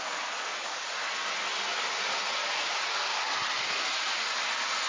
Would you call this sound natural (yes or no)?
yes